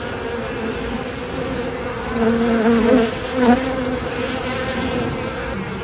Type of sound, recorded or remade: recorded